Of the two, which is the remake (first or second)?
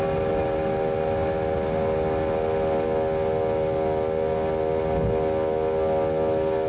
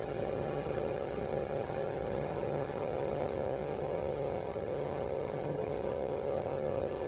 second